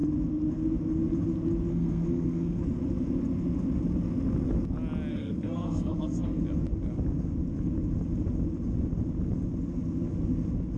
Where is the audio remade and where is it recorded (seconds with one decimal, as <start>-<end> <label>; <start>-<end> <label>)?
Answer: 0.0-1.7 recorded; 1.7-2.6 remade; 2.6-5.1 recorded; 5.1-6.4 remade; 6.4-10.8 recorded